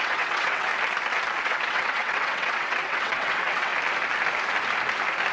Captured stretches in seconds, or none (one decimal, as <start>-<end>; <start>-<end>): 0.7-1.4; 3.7-5.3